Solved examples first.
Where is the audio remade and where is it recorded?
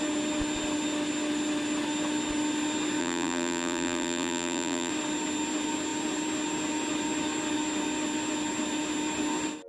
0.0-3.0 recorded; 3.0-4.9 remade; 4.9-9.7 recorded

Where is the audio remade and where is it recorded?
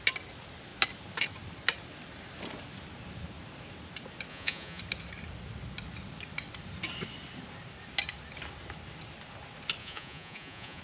0.0-4.3 recorded; 4.3-4.8 remade; 4.8-9.8 recorded; 9.8-10.8 remade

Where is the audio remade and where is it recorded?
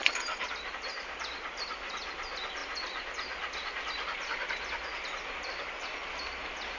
0.0-6.8 recorded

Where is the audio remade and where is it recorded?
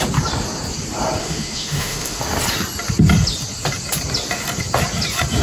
0.0-1.2 recorded; 1.2-2.2 remade; 2.2-5.4 recorded